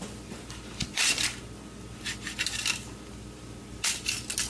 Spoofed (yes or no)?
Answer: no